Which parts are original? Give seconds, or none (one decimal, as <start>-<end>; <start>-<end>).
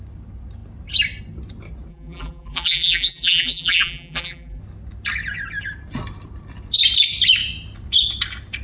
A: 0.0-1.9; 4.6-8.6